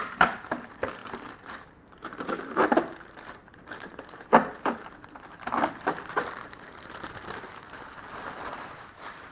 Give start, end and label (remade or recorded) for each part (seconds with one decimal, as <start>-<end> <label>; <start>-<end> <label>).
0.0-9.3 remade